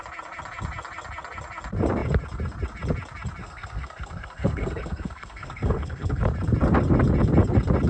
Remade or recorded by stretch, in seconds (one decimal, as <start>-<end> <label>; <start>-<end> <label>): 0.0-3.4 recorded; 3.4-6.2 remade; 6.2-7.9 recorded